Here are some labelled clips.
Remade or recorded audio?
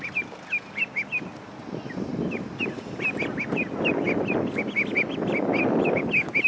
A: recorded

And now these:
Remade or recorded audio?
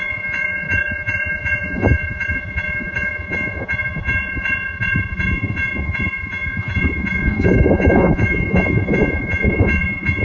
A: remade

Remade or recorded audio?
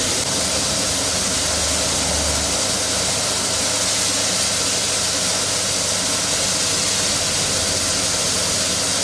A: recorded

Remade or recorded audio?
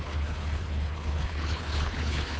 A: remade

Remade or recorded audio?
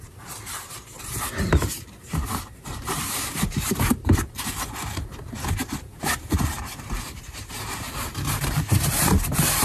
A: remade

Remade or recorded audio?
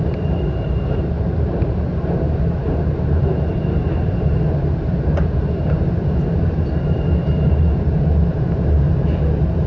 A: remade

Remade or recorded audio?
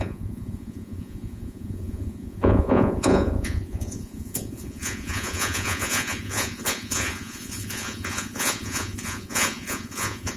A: remade